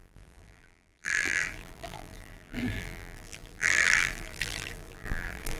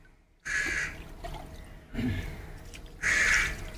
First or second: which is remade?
first